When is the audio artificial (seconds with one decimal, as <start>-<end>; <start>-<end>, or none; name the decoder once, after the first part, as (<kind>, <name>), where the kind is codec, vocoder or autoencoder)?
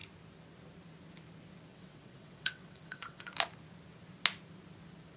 1.7-3.3 (vocoder, WaveNeXt)